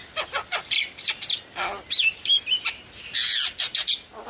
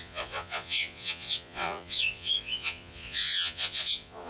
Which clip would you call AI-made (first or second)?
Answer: second